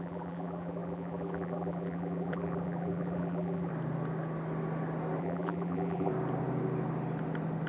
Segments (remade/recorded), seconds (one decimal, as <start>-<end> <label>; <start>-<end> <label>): 0.0-3.7 remade; 3.7-5.2 recorded; 5.2-6.1 remade; 6.1-7.7 recorded